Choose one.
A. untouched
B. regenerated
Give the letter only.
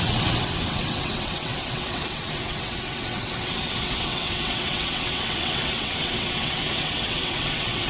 B